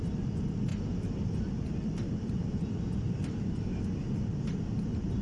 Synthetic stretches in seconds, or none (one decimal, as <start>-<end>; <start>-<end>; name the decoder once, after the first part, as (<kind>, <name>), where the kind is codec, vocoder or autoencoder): 0.7-3.8 (vocoder, BigVGAN v2)